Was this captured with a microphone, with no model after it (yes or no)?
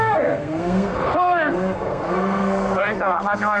no